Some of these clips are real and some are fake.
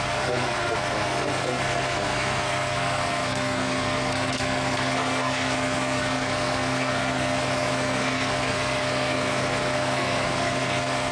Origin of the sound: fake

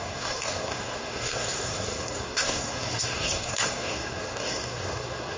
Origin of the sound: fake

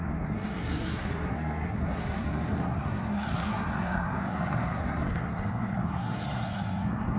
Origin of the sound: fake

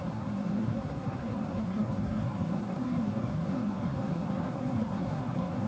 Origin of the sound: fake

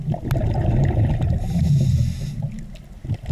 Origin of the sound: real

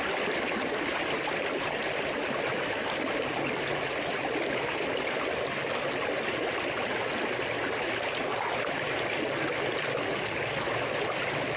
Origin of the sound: real